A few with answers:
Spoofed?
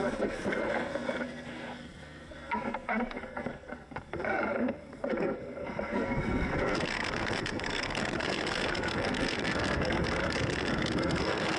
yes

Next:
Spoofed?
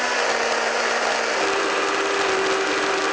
no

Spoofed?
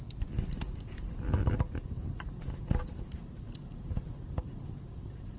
no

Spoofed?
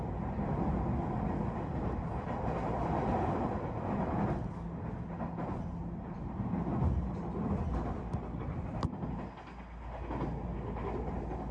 no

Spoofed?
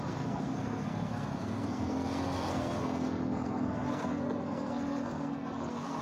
yes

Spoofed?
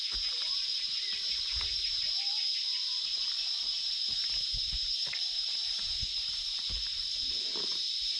yes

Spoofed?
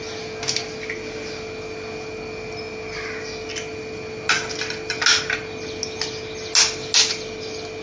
no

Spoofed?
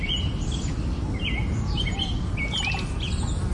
no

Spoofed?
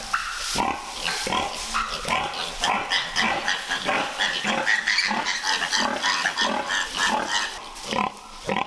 no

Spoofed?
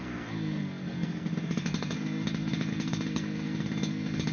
yes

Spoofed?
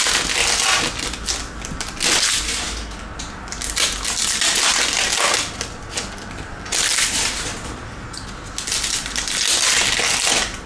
no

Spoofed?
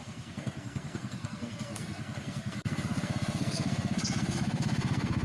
yes